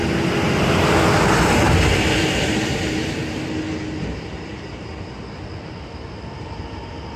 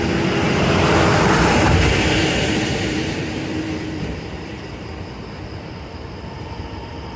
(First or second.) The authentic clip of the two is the first